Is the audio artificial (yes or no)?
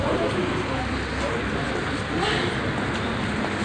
no